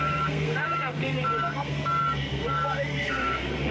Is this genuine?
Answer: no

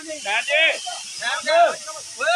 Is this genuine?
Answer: yes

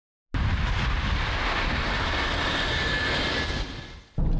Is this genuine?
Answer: yes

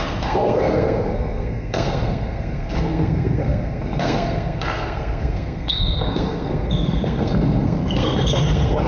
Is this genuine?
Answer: no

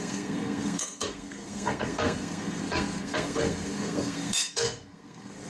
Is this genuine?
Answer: no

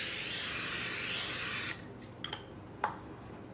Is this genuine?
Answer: yes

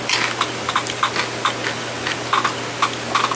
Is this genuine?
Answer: yes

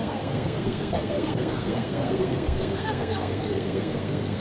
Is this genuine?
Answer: no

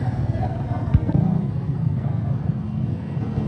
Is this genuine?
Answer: no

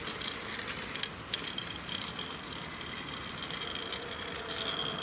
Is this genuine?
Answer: yes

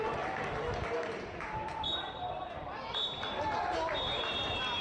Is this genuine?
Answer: yes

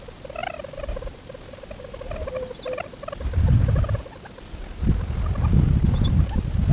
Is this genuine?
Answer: yes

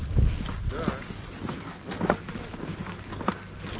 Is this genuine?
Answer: yes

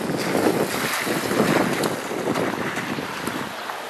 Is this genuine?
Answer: yes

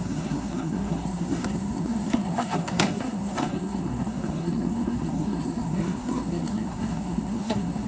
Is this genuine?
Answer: no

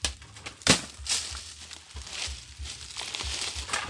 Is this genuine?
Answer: yes